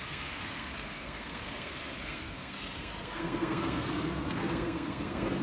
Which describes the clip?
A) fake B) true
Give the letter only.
A